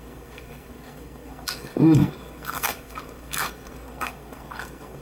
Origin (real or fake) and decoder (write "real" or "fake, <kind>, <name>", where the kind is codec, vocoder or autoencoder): fake, codec, SNAC